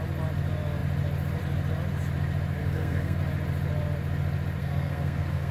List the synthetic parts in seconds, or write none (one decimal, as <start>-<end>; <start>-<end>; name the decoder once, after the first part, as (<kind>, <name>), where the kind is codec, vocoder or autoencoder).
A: 2.6-3.2 (codec, SNAC); 4.6-5.5